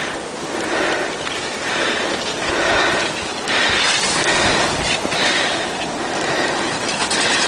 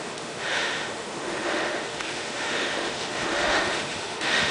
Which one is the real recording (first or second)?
first